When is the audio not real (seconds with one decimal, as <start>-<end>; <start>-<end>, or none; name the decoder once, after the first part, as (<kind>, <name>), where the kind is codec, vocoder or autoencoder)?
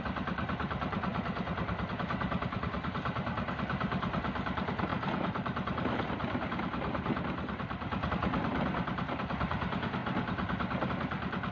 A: 0.0-11.5 (vocoder, BigVGAN v2)